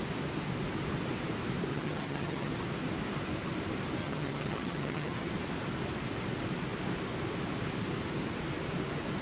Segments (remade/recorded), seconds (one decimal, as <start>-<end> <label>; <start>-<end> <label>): 0.0-1.7 recorded; 1.7-2.5 remade; 2.5-4.0 recorded; 4.0-5.3 remade; 5.3-9.2 recorded